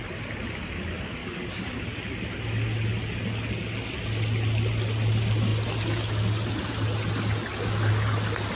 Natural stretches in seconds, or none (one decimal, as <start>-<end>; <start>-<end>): 0.0-1.2; 1.8-8.5